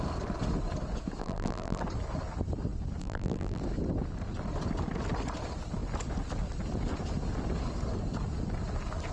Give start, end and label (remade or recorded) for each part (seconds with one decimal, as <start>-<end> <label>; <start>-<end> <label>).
0.0-1.2 recorded; 1.2-1.8 remade; 1.8-3.0 recorded; 3.0-3.6 remade; 3.6-9.1 recorded